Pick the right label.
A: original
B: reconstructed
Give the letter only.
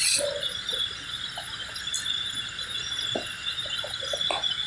A